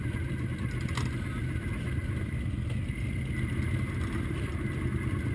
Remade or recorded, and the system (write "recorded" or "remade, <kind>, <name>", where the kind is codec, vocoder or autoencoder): recorded